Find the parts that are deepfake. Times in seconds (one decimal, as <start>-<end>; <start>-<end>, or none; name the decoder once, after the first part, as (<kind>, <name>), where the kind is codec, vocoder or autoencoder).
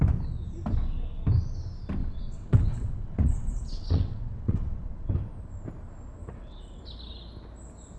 2.0-5.1 (vocoder, WaveNeXt); 6.2-6.8